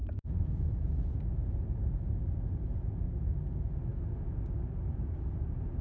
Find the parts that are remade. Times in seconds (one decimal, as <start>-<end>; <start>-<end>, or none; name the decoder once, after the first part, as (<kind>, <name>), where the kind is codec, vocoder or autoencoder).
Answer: none